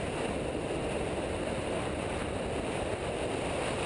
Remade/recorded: recorded